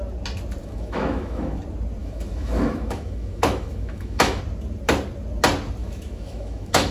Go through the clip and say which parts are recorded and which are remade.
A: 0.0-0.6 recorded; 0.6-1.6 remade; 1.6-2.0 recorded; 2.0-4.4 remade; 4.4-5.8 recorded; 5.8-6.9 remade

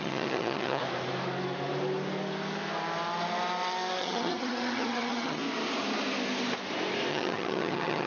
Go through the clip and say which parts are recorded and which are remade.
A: 0.0-0.8 remade; 0.8-4.0 recorded; 4.0-5.4 remade; 5.4-7.1 recorded; 7.1-8.1 remade

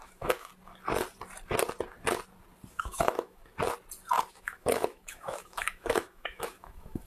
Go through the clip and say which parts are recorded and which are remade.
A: 0.0-0.5 remade; 0.5-2.7 recorded; 2.7-3.4 remade; 3.4-4.3 recorded; 4.3-7.1 remade

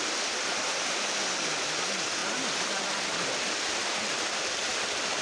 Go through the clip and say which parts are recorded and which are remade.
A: 0.0-5.2 recorded